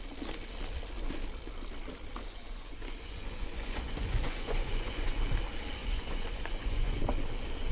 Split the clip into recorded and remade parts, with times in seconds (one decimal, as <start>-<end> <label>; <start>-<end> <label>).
0.0-2.2 recorded; 2.2-5.2 remade; 5.2-5.8 recorded; 5.8-7.0 remade; 7.0-7.7 recorded